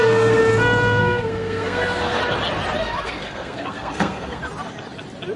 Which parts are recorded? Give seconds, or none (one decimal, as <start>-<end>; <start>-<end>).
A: 0.4-1.0; 2.2-2.8; 4.4-5.4

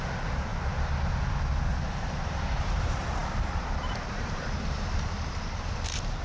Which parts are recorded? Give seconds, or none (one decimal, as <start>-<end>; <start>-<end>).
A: 0.5-2.6

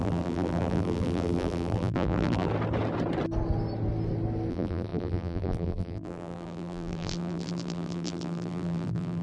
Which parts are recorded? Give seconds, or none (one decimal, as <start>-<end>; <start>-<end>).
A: 2.5-4.5

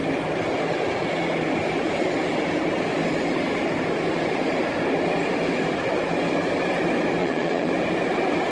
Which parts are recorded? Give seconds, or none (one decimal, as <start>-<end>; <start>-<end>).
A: 0.0-7.2; 7.7-8.5